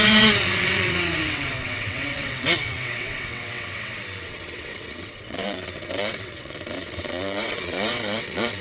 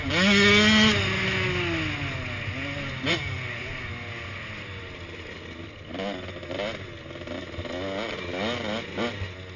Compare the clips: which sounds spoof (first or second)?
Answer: first